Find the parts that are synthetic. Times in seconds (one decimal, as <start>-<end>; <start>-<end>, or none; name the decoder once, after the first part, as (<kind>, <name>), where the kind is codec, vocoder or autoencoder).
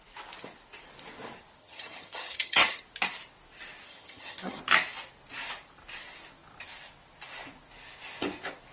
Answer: 1.6-2.8 (vocoder, HiFi-GAN); 3.9-4.6